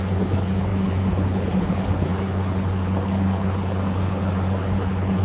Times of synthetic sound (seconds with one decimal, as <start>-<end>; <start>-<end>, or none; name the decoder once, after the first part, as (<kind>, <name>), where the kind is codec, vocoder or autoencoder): 0.0-5.2 (codec, HILCodec)